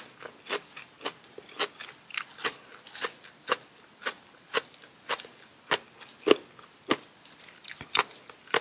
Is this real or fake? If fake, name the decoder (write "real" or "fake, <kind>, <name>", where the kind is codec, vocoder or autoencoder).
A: real